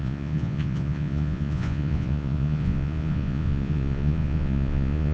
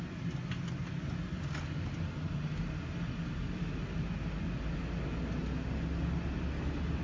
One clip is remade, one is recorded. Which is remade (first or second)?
first